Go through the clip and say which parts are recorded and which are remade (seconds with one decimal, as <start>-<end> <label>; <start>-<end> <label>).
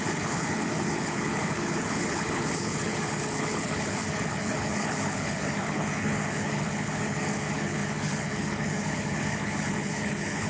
0.0-10.5 remade